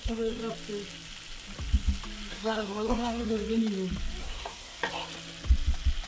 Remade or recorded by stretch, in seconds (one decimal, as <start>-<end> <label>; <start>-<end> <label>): 0.0-0.4 remade; 0.4-2.3 recorded; 2.3-3.4 remade; 3.4-4.2 recorded; 4.2-4.8 remade; 4.8-6.1 recorded